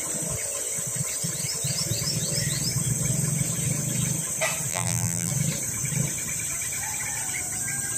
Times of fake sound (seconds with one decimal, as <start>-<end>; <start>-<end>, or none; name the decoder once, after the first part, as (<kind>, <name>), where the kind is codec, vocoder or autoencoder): 4.7-5.3 (vocoder, BigVGAN v2)